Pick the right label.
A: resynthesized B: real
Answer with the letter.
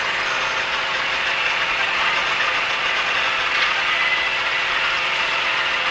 A